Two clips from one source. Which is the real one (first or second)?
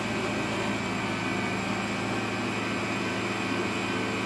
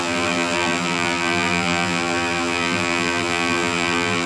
first